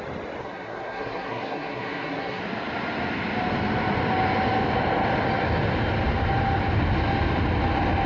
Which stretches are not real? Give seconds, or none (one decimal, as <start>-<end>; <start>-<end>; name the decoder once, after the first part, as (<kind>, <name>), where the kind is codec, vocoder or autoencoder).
0.4-2.4 (codec, SNAC)